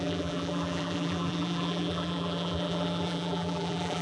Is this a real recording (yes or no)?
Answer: no